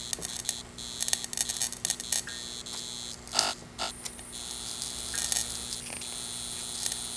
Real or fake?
real